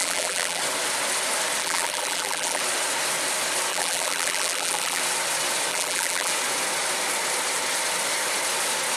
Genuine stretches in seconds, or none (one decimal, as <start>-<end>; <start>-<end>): 0.6-1.6; 2.6-3.7; 5.0-5.7; 6.3-9.0